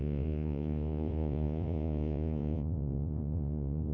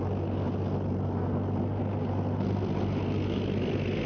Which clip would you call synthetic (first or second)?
first